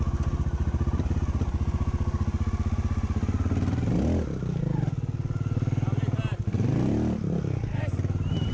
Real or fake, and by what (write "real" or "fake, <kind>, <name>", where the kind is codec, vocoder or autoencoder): real